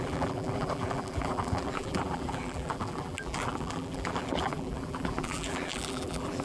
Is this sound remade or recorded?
remade